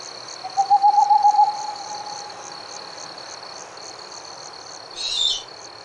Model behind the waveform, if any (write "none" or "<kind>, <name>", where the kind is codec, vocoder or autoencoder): vocoder, BigVGAN v2